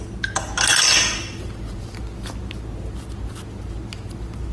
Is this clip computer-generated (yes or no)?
no